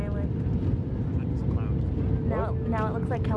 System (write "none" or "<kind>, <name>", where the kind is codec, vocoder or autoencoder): none